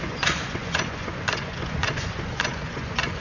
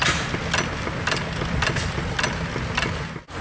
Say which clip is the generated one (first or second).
first